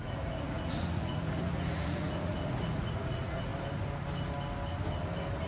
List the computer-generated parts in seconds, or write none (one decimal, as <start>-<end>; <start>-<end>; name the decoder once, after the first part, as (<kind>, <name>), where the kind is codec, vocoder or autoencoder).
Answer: 0.0-3.5 (vocoder, Vocos)